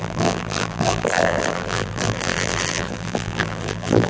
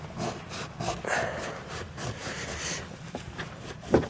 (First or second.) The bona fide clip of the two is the second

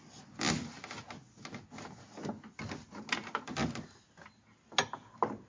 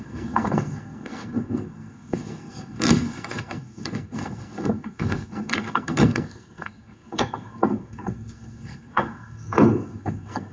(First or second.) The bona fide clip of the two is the first